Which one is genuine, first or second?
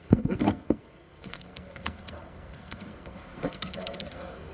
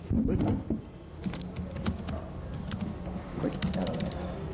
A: second